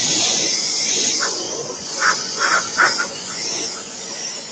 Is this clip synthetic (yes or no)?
yes